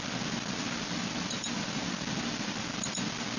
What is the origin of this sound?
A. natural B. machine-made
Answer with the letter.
A